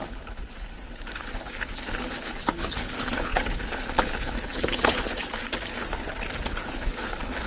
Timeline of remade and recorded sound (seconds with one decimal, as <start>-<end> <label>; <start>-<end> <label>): 0.0-1.0 recorded; 1.0-5.4 remade; 5.4-6.5 recorded; 6.5-7.5 remade